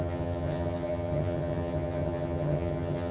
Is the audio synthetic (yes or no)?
yes